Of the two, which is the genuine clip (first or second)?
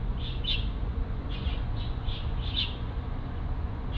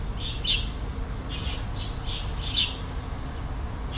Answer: second